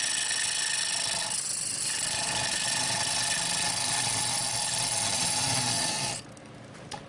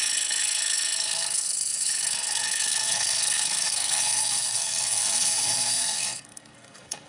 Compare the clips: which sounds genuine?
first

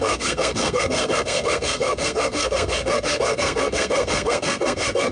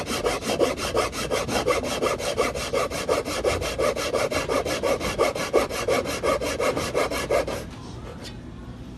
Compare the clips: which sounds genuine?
second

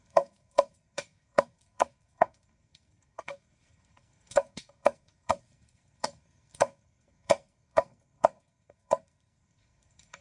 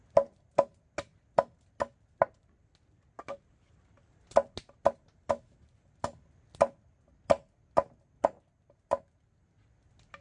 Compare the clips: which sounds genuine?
second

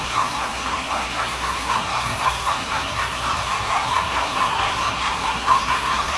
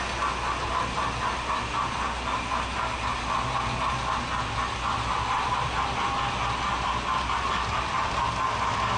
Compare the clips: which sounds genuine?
second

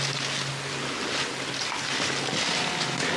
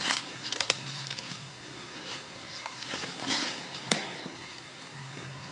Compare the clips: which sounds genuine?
first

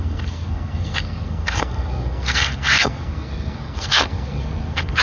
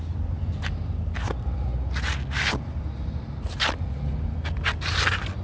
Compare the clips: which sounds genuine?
second